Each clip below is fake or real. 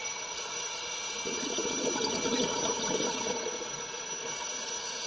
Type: fake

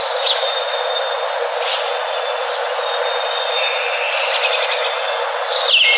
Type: real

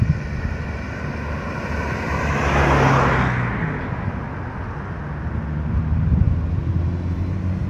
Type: real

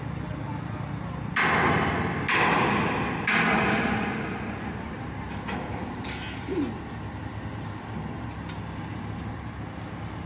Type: real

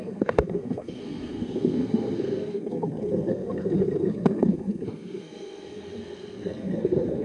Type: fake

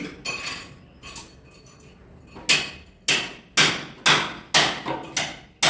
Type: real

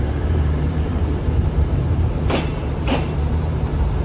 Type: fake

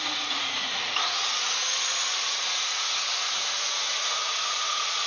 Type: fake